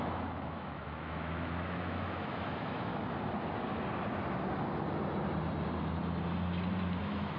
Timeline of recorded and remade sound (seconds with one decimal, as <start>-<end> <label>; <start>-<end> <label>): 0.0-2.9 remade; 2.9-7.0 recorded; 7.0-7.4 remade